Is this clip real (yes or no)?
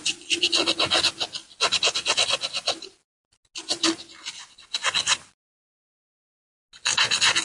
yes